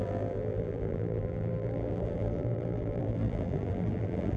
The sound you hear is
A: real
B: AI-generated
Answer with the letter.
B